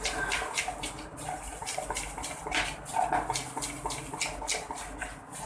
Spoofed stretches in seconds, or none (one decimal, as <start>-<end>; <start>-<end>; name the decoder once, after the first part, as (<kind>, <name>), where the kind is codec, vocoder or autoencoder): 1.1-2.4 (vocoder, BigVGAN v2); 4.5-5.0